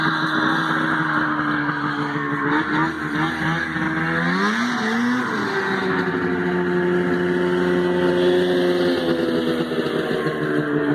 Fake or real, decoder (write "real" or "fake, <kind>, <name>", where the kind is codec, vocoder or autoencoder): real